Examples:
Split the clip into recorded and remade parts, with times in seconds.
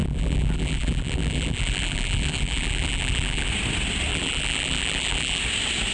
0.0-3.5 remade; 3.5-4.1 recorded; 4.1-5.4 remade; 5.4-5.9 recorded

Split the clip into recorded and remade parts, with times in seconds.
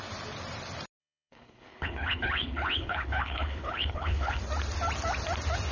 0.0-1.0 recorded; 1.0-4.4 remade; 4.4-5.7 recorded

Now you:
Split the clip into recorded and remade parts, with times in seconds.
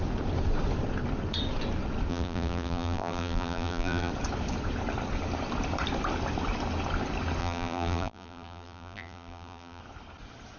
0.0-2.1 recorded; 2.1-4.1 remade; 4.1-7.4 recorded; 7.4-9.8 remade; 9.8-10.6 recorded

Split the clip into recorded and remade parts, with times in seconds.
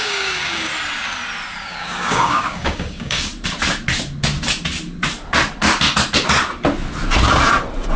0.0-0.7 remade; 0.7-1.6 recorded; 1.6-3.3 remade; 3.3-8.0 recorded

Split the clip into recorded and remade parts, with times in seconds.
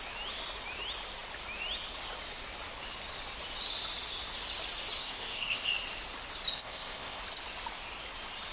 0.0-5.0 recorded; 5.0-5.7 remade; 5.7-6.5 recorded; 6.5-7.2 remade; 7.2-8.5 recorded